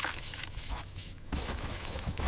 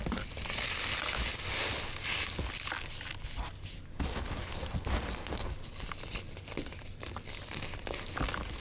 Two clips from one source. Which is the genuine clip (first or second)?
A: second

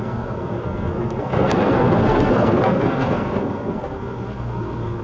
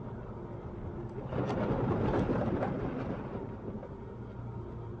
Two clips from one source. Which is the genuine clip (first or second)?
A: second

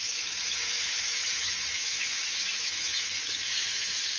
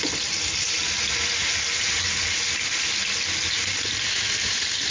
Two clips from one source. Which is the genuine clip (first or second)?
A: second